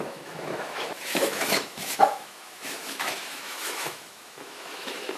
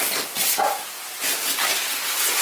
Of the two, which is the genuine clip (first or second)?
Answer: second